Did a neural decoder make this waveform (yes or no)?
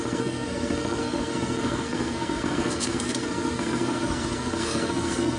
yes